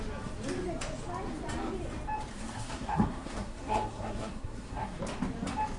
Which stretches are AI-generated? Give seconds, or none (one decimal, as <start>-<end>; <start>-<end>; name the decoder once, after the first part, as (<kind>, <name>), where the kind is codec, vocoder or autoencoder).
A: 2.3-5.0 (codec, SNAC)